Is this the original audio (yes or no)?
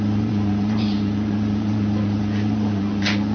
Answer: no